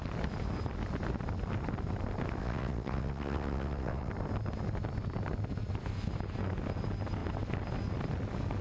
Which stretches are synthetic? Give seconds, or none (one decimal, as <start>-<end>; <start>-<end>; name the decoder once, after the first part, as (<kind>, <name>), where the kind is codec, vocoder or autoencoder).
2.4-4.1 (vocoder, WaveNeXt)